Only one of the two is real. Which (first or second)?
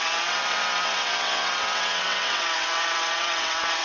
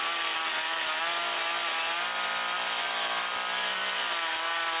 second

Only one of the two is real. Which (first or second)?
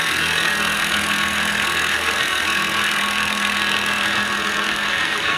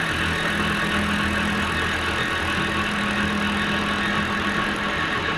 second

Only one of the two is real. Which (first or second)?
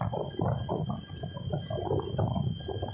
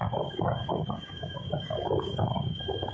first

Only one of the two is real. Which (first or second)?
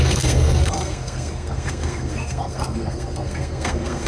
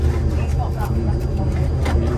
second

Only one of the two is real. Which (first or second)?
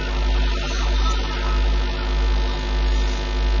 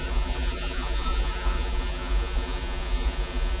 first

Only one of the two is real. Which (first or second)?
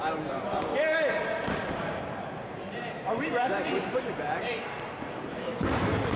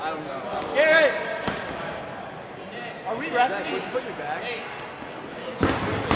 second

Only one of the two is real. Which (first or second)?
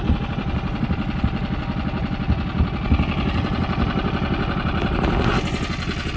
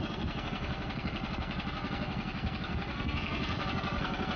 first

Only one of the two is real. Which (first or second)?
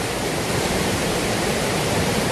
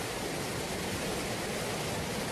second